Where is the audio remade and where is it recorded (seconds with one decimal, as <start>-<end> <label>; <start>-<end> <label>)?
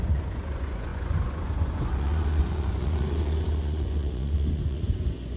0.0-5.4 remade